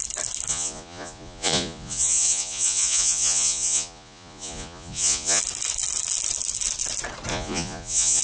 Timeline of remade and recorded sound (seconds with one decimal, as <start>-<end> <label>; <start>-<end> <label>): 0.0-0.5 recorded; 0.5-5.4 remade; 5.4-7.3 recorded; 7.3-8.2 remade